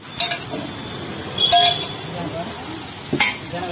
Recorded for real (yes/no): yes